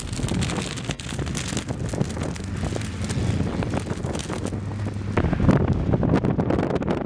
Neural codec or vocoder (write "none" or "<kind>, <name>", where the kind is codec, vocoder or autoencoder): none